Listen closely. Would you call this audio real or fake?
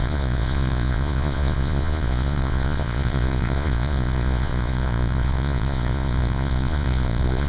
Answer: fake